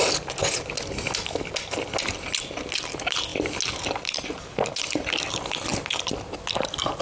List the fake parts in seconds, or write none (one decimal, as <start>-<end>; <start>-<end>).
none